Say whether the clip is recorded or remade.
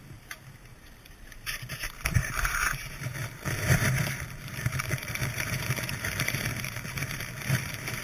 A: remade